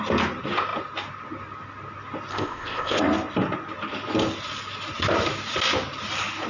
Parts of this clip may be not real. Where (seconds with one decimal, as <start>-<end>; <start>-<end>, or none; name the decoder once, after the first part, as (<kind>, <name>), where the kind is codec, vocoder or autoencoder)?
2.3-3.0 (codec, ZipCodec)